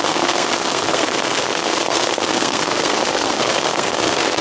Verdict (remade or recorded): remade